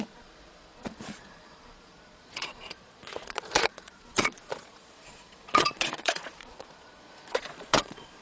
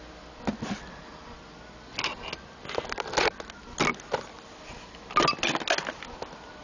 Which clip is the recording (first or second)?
second